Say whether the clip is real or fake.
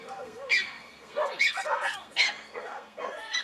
fake